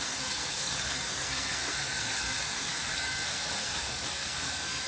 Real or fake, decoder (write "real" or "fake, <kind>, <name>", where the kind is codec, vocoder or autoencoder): fake, codec, SNAC